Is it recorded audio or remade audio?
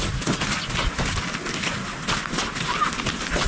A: recorded